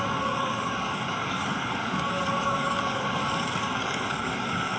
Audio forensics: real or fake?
fake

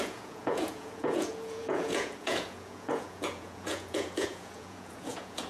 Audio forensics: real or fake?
fake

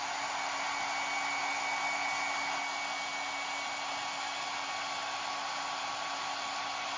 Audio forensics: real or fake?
real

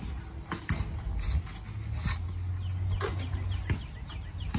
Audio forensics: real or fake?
real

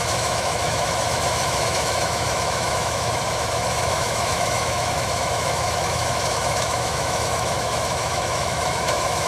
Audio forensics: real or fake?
fake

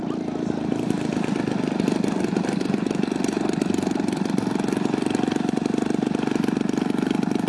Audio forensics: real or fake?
real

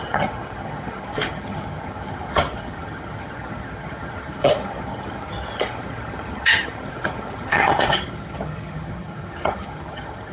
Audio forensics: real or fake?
fake